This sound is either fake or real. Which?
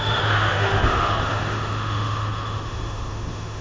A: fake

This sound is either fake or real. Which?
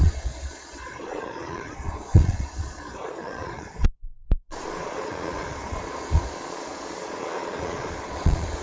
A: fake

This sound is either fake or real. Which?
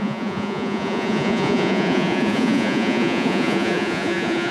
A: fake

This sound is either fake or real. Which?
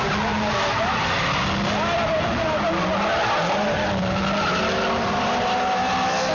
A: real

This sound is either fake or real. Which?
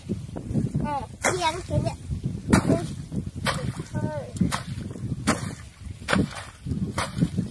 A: real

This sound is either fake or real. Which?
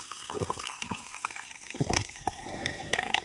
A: fake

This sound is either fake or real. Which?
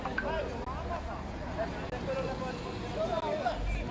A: real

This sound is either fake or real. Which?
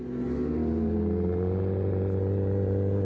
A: real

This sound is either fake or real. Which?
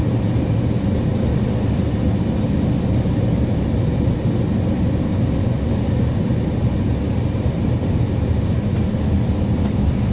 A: real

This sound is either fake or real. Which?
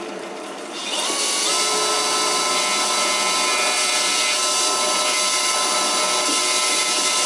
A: real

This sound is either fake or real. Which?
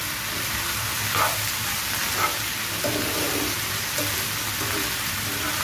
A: fake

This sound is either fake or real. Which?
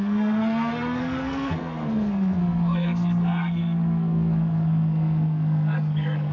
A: fake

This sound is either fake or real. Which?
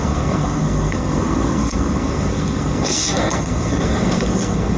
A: fake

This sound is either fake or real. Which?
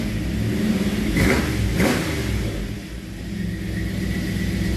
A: real